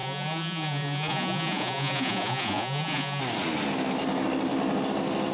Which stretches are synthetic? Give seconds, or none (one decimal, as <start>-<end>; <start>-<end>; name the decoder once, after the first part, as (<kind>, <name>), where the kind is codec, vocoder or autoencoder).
0.0-3.2 (vocoder, Vocos)